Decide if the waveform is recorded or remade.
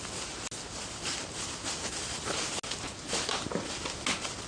recorded